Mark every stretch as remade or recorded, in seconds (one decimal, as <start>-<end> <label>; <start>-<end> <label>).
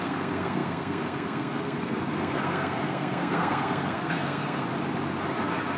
0.0-4.7 remade; 4.7-5.8 recorded